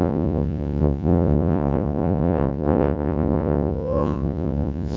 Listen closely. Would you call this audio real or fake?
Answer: fake